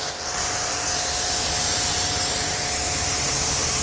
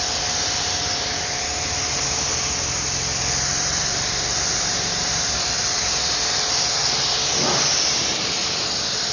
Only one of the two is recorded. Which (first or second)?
first